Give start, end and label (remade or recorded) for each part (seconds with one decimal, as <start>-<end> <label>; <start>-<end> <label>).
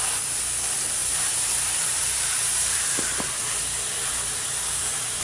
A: 0.0-1.0 recorded; 1.0-3.0 remade; 3.0-5.2 recorded